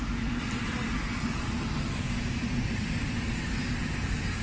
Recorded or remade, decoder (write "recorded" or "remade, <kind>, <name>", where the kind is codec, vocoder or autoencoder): recorded